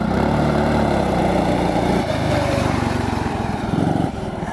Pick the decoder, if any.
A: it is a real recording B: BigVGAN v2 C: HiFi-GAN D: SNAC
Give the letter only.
B